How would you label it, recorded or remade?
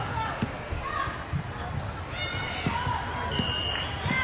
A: recorded